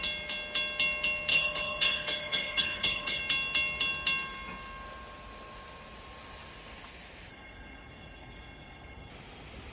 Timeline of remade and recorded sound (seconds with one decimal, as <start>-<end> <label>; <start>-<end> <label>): 0.0-1.3 recorded; 1.3-3.2 remade; 3.2-7.3 recorded; 7.3-9.1 remade; 9.1-9.7 recorded